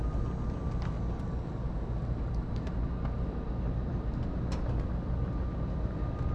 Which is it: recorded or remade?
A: recorded